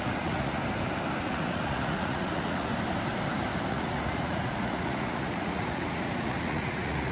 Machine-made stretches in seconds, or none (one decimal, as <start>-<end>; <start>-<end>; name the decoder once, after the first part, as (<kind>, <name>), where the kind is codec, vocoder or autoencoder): 0.0-0.6 (vocoder, Vocos); 1.2-2.7; 3.7-7.1